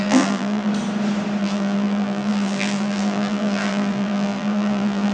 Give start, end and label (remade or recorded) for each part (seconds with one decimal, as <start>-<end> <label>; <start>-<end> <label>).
0.0-0.7 remade; 0.7-1.4 recorded; 1.4-5.1 remade